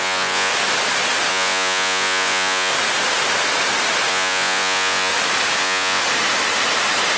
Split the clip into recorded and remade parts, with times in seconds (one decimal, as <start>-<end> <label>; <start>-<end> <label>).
0.0-0.5 remade; 0.5-1.3 recorded; 1.3-2.7 remade; 2.7-4.1 recorded; 4.1-5.1 remade; 5.1-5.6 recorded; 5.6-6.0 remade; 6.0-7.2 recorded